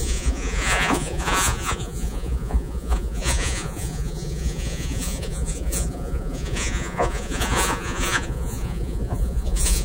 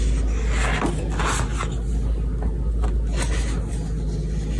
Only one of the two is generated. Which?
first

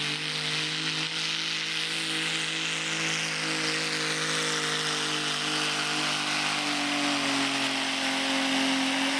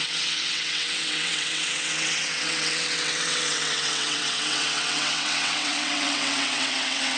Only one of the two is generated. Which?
second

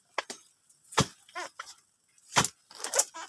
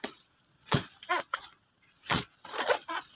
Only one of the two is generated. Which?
second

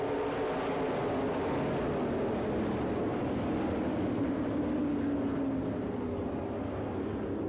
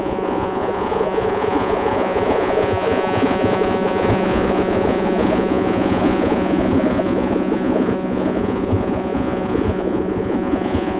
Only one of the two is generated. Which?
second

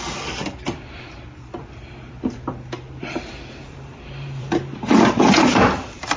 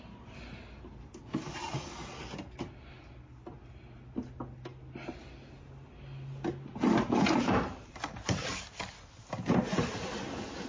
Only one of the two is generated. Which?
first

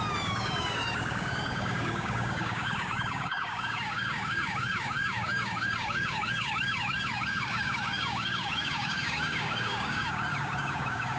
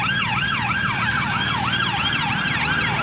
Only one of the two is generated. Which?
first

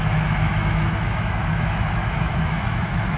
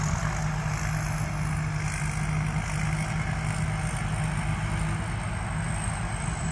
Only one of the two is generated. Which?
first